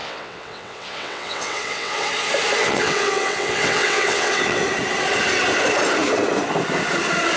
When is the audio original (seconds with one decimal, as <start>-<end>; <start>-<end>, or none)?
2.1-2.6; 4.6-7.4